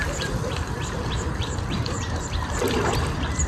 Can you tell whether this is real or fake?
real